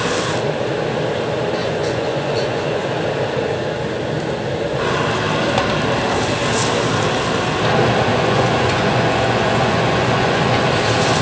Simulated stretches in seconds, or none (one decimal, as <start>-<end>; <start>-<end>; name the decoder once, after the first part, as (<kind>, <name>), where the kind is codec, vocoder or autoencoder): 1.6-2.9 (vocoder, Vocos); 8.1-10.6